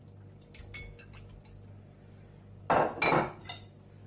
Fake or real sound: real